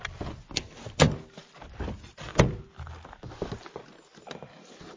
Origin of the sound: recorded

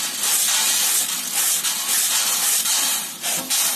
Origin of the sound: recorded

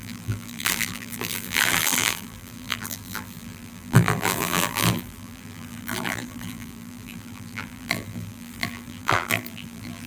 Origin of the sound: remade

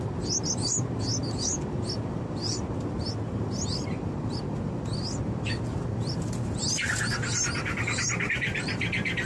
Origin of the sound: recorded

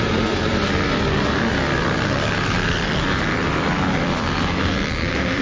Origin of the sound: remade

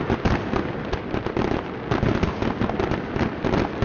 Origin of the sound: recorded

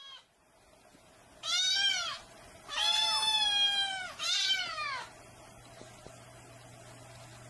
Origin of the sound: recorded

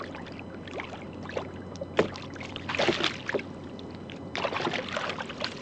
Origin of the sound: recorded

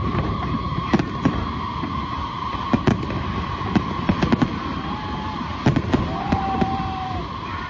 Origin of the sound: remade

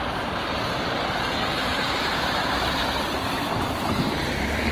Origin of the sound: remade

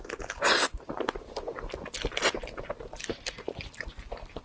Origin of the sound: recorded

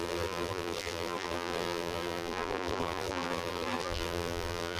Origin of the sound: remade